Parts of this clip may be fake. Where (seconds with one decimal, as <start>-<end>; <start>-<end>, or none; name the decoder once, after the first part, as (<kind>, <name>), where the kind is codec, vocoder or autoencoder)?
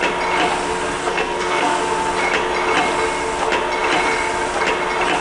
1.0-1.8 (codec, SNAC)